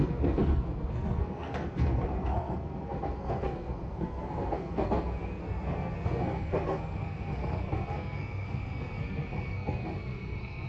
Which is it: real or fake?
fake